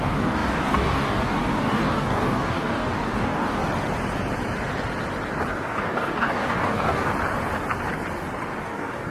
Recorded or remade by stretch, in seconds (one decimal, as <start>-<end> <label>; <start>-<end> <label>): 0.0-3.6 remade; 3.6-5.5 recorded; 5.5-7.1 remade; 7.1-8.6 recorded; 8.6-9.1 remade